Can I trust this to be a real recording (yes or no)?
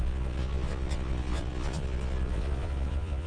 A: no